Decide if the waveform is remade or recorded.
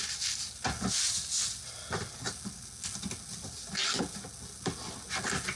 recorded